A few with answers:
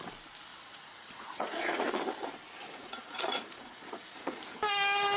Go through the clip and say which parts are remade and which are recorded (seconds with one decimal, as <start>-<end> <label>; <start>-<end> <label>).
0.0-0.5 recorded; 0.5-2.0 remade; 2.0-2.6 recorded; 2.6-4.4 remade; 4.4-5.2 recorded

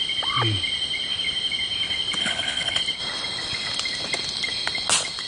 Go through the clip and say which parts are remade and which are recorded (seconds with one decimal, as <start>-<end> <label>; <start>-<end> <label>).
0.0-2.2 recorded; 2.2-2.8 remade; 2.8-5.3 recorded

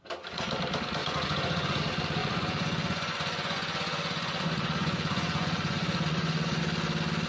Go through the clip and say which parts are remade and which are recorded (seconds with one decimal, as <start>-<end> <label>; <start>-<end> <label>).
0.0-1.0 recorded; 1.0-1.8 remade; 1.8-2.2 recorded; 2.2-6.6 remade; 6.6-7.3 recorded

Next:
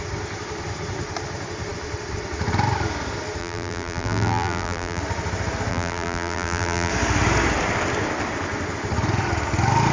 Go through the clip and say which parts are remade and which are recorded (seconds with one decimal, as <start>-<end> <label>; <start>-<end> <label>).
0.0-3.4 recorded; 3.4-5.0 remade; 5.0-5.7 recorded; 5.7-6.9 remade; 6.9-9.9 recorded

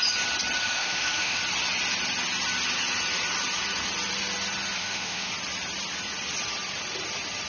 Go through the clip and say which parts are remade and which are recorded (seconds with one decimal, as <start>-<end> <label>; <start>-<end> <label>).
0.0-0.6 recorded; 0.6-1.4 remade; 1.4-4.8 recorded; 4.8-5.3 remade; 5.3-7.5 recorded

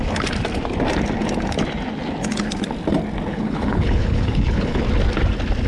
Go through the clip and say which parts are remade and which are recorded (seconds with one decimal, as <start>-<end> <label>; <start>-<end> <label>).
0.0-3.3 recorded; 3.3-4.8 remade; 4.8-5.7 recorded

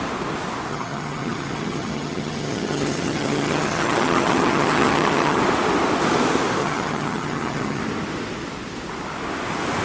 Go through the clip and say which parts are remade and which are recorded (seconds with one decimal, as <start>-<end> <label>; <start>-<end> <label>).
0.0-0.7 recorded; 0.7-5.4 remade; 5.4-6.6 recorded; 6.6-7.8 remade; 7.8-9.8 recorded